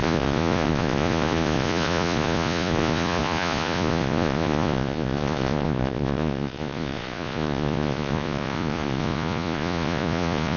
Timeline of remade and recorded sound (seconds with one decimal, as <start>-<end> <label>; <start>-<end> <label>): 0.0-10.6 remade

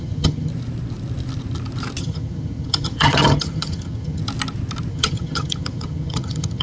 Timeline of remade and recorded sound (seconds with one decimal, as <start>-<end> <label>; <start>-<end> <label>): 0.0-0.5 remade; 0.5-2.0 recorded; 2.0-4.2 remade; 4.2-4.9 recorded; 4.9-6.6 remade

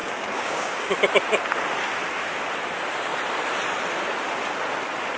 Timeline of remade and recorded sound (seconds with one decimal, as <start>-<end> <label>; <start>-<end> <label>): 0.0-0.9 remade; 0.9-5.2 recorded

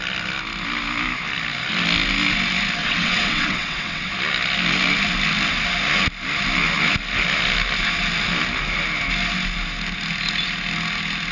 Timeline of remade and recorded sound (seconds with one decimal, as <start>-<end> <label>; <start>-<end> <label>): 0.0-2.8 recorded; 2.8-4.1 remade; 4.1-11.3 recorded

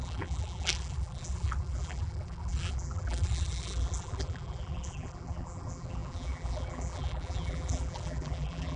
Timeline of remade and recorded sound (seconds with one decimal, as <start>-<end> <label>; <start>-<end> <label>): 0.0-8.8 remade

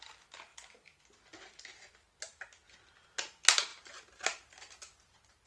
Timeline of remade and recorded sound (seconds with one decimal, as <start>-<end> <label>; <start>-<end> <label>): 0.0-5.5 recorded

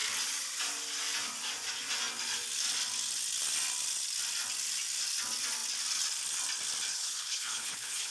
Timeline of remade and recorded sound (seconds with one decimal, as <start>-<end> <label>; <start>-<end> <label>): 0.0-6.9 recorded; 6.9-8.1 remade